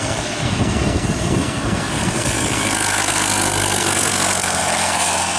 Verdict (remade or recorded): remade